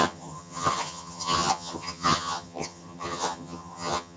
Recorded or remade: remade